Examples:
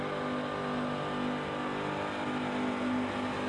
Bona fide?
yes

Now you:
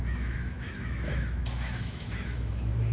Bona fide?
no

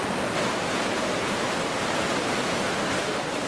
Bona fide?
yes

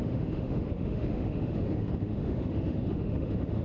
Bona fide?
no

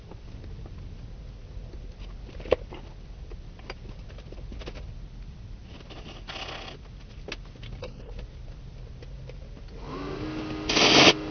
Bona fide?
yes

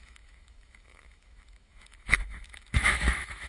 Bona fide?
no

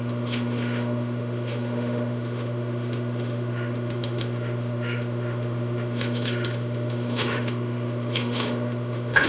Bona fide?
no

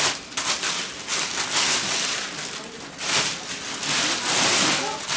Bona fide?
yes